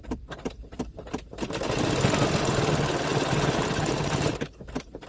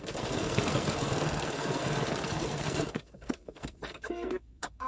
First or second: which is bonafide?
first